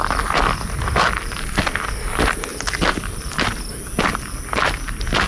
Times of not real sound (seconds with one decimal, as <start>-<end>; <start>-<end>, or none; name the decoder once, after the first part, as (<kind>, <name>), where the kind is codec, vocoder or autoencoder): none